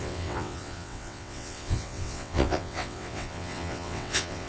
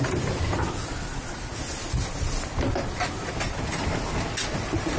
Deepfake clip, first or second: first